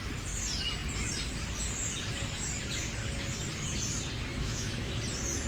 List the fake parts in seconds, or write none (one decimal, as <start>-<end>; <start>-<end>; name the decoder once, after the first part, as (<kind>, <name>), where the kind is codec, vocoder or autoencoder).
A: 4.3-5.0 (autoencoder, DAC-VAE)